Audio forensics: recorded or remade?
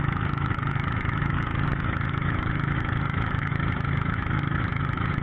remade